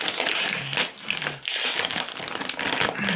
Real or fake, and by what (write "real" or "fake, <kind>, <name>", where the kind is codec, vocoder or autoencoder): real